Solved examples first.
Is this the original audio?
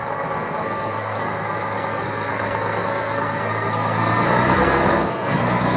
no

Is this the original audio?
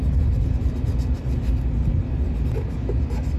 yes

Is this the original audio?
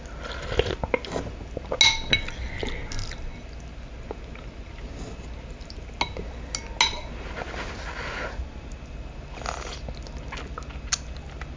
yes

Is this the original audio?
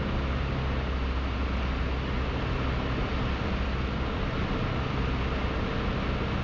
yes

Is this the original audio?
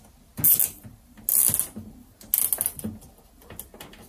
yes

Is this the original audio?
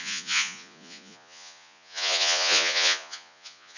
no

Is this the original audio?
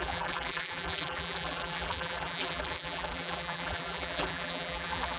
no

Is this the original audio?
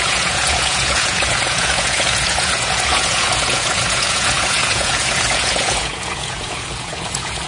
no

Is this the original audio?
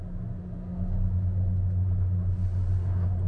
yes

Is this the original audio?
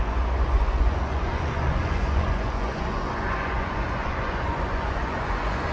no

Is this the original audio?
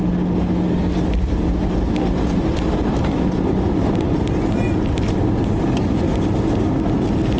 yes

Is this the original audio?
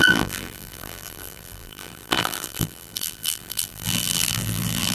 no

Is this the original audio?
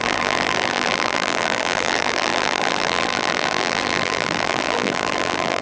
no